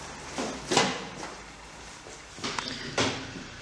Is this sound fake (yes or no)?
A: no